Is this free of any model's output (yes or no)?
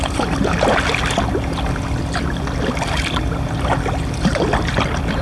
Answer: yes